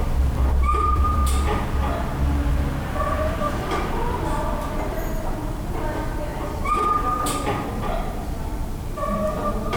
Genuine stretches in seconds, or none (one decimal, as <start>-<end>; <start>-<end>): 1.2-2.5